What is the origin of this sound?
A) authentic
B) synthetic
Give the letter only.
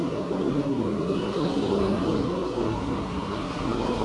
B